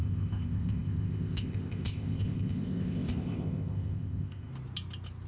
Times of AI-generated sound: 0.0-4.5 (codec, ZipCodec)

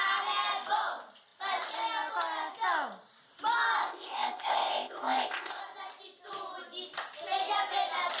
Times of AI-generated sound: 3.8-5.6 (codec, ZipCodec)

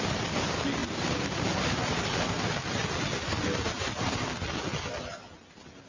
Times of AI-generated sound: none